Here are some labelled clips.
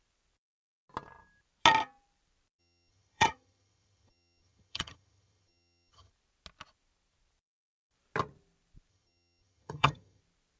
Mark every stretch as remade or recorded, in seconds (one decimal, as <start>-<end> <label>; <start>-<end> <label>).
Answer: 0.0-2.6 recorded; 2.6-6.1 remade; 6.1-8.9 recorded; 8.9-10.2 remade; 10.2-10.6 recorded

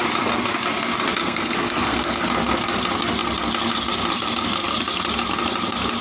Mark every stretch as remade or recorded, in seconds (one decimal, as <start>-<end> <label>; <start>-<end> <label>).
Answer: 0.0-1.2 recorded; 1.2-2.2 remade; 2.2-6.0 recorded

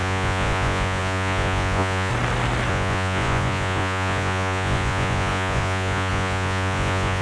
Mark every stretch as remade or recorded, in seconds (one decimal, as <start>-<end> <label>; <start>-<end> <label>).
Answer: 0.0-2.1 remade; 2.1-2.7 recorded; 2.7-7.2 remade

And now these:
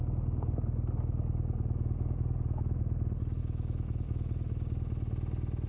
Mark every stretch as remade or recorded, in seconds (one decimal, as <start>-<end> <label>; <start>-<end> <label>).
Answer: 0.0-5.7 recorded

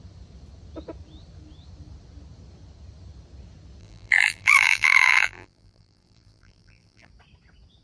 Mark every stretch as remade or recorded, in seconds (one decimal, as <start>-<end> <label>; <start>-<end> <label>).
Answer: 0.0-3.8 recorded; 3.8-7.1 remade; 7.1-7.8 recorded

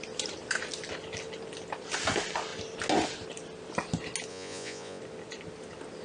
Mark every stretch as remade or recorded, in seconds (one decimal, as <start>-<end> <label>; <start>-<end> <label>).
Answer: 0.0-4.3 recorded; 4.3-5.0 remade; 5.0-6.0 recorded

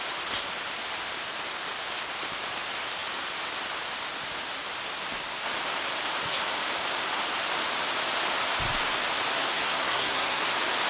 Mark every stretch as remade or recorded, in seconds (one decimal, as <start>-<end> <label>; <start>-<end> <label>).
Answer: 0.0-9.5 recorded; 9.5-10.4 remade; 10.4-10.9 recorded